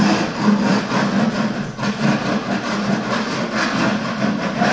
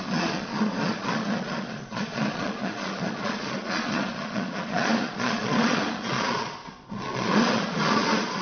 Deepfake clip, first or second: second